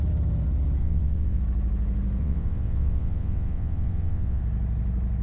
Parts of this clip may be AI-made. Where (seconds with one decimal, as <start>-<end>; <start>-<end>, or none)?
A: 0.8-1.4; 2.2-4.4

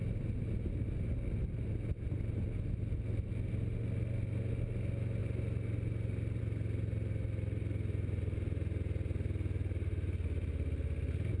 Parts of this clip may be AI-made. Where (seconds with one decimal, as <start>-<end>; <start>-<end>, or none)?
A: none

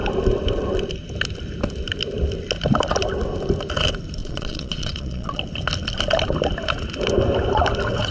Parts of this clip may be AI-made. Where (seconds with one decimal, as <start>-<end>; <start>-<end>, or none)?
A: 4.2-5.4